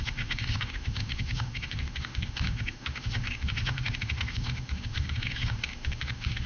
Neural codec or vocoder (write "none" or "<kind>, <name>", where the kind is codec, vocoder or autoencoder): autoencoder, DAC-VAE